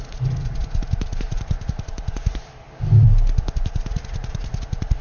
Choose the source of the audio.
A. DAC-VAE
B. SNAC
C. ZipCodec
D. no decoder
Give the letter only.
D